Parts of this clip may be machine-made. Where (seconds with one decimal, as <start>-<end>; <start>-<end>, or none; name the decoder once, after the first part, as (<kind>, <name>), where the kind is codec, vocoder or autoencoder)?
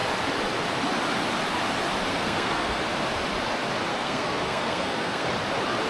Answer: 2.1-2.8 (codec, SNAC); 3.9-5.3